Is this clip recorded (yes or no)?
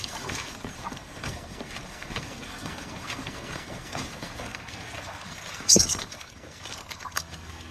no